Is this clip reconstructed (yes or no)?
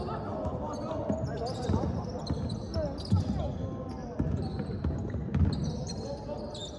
no